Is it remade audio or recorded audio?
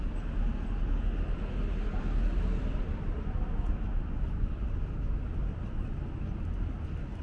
recorded